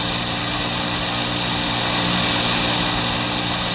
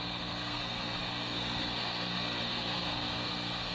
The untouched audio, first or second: first